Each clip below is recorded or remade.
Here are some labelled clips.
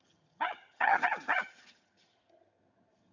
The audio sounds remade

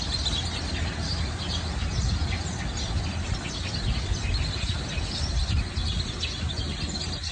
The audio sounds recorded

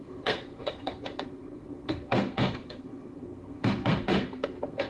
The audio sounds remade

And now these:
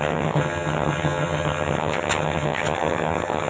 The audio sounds remade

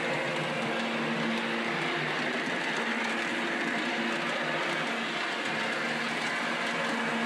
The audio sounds recorded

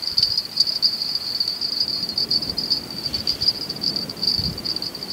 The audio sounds remade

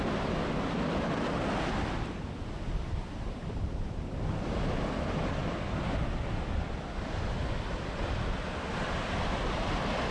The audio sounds remade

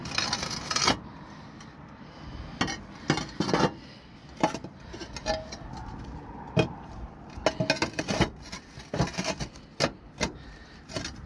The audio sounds recorded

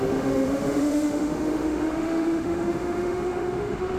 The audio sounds remade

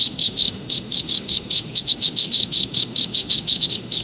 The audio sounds remade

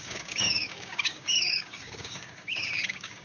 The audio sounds remade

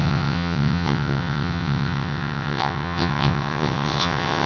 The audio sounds remade